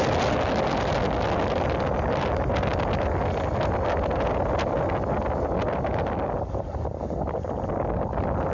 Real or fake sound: real